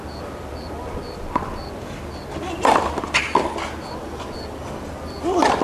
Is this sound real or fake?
real